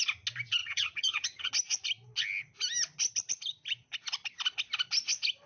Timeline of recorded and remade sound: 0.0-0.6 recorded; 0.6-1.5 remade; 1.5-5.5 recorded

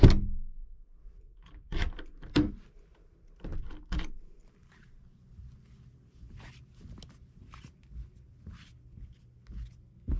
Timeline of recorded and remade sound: 0.0-10.2 recorded

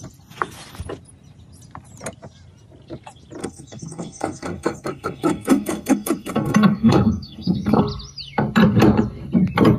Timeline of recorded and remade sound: 0.0-3.4 recorded; 3.4-7.8 remade; 7.8-9.8 recorded

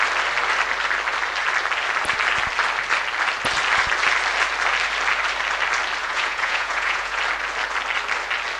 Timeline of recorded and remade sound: 0.0-6.0 recorded; 6.0-7.2 remade; 7.2-8.6 recorded

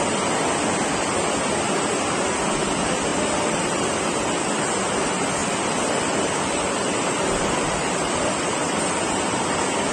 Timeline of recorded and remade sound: 0.0-3.1 recorded; 3.1-4.0 remade; 4.0-5.4 recorded; 5.4-8.8 remade; 8.8-9.9 recorded

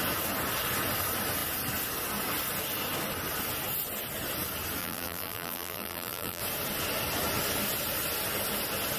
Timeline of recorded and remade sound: 0.0-4.8 recorded; 4.8-6.4 remade; 6.4-9.0 recorded

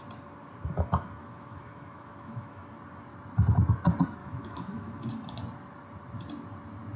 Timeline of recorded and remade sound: 0.0-1.2 recorded; 1.2-2.6 remade; 2.6-4.2 recorded; 4.2-5.1 remade; 5.1-7.0 recorded